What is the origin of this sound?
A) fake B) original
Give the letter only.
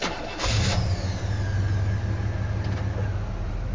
B